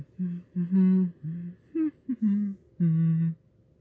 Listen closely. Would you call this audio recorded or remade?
recorded